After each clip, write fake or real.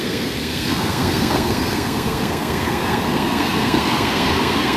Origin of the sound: fake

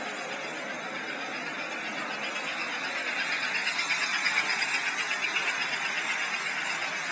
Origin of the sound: real